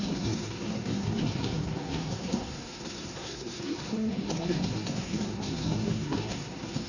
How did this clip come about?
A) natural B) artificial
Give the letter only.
B